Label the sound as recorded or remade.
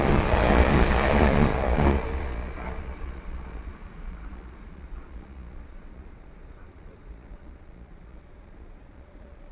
remade